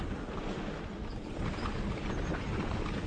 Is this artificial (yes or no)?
no